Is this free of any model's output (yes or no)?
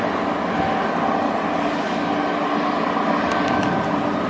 yes